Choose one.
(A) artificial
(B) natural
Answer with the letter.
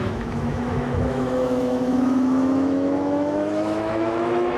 A